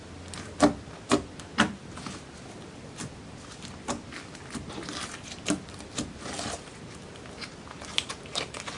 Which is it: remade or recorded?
recorded